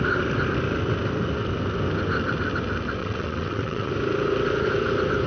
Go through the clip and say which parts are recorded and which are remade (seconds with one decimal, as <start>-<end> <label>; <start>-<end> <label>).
0.0-3.0 recorded; 3.0-3.9 remade; 3.9-5.3 recorded